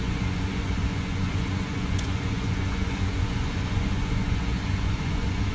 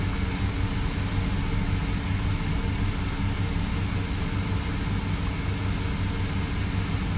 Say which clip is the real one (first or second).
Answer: second